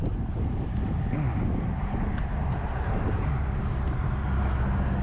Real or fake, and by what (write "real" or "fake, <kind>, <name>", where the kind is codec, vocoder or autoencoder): real